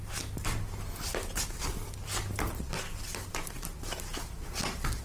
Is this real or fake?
real